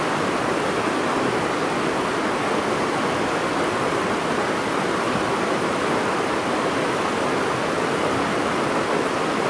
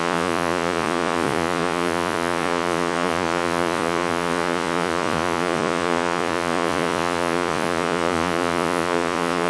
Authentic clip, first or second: first